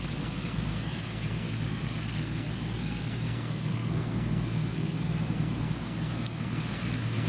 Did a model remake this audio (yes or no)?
yes